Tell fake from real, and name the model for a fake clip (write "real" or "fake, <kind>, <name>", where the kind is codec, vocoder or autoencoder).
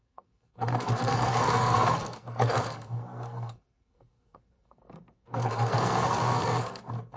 fake, codec, SNAC